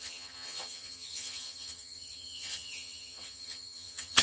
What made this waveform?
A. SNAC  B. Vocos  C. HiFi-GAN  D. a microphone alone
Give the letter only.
C